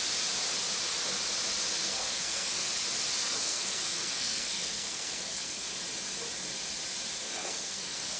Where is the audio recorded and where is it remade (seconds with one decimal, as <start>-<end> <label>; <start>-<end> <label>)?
0.0-1.8 recorded; 1.8-2.7 remade; 2.7-3.2 recorded; 3.2-5.7 remade; 5.7-7.2 recorded; 7.2-8.2 remade